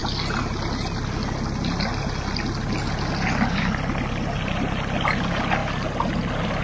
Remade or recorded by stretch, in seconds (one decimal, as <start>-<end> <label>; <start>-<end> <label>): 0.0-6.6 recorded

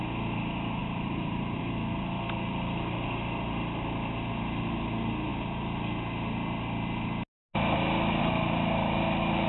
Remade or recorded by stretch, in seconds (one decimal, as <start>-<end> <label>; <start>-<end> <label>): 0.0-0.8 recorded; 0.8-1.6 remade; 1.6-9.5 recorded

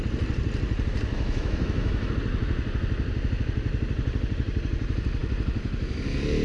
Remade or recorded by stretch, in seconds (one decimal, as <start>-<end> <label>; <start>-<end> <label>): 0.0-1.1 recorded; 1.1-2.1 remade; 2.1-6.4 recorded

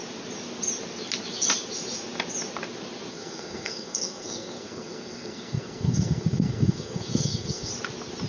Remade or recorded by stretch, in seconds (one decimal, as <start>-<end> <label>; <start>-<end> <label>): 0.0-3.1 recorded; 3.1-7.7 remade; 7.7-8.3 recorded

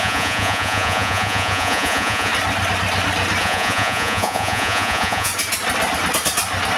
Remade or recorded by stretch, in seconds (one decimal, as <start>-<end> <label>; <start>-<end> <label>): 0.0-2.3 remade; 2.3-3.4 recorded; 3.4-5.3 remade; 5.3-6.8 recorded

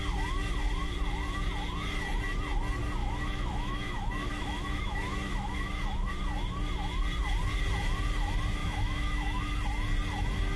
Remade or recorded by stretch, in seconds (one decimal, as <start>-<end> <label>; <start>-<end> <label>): 0.0-3.0 recorded; 3.0-6.1 remade; 6.1-8.6 recorded; 8.6-9.4 remade; 9.4-10.6 recorded